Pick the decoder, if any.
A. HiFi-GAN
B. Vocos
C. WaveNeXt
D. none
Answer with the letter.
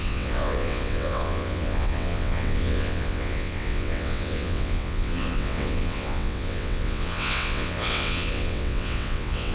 C